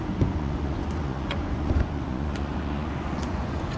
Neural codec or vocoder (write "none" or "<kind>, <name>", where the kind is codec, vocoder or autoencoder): vocoder, Vocos